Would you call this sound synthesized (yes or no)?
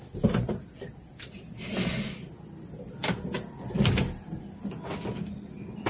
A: no